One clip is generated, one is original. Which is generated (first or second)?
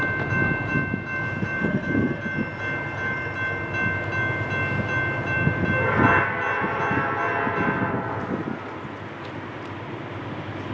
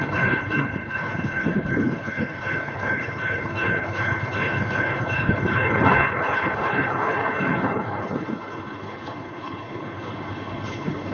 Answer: second